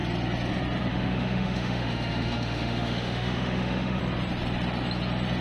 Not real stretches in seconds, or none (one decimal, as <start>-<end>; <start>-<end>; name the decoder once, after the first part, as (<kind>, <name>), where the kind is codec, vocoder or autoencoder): 0.9-4.0 (autoencoder, DAC-VAE)